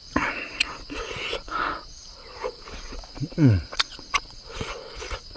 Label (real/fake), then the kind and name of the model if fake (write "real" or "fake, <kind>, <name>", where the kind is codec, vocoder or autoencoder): fake, vocoder, Vocos